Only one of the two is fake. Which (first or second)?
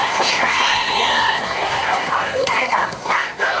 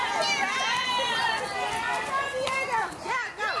first